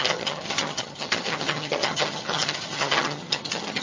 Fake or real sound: fake